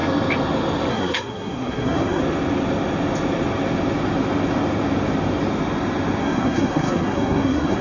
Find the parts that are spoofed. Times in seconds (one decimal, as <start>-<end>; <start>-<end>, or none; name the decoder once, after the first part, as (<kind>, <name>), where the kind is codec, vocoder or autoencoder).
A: 0.9-2.2 (codec, SNAC); 6.2-7.8